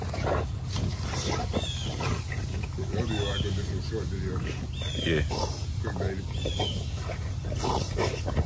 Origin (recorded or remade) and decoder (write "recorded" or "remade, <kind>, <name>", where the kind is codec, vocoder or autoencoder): recorded